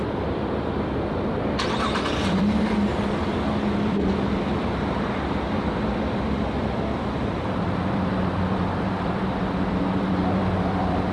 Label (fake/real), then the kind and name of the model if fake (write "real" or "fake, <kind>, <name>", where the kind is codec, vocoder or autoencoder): fake, vocoder, BigVGAN v2